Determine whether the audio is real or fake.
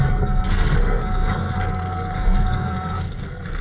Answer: fake